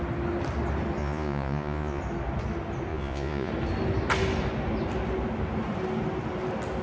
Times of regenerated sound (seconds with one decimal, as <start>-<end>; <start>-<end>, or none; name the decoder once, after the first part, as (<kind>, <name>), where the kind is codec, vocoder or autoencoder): 1.0-2.0 (vocoder, Vocos); 2.9-3.5